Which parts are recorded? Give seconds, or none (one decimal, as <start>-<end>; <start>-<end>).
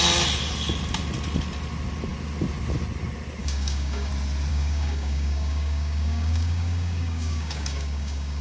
0.0-3.4; 4.1-4.5